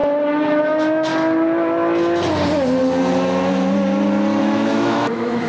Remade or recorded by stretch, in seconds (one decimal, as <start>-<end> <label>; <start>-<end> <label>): 0.0-0.6 recorded; 0.6-1.1 remade; 1.1-4.4 recorded; 4.4-5.5 remade